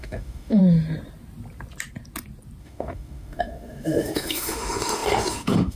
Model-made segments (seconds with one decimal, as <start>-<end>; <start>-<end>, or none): 0.0-0.6; 2.6-5.8